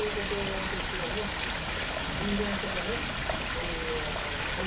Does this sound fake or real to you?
real